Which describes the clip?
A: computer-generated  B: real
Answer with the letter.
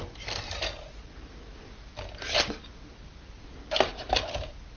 B